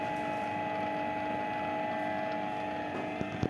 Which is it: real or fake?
real